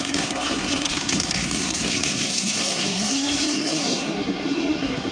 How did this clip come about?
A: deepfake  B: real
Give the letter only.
A